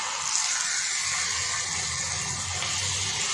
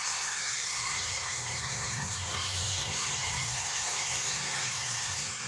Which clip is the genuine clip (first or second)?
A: first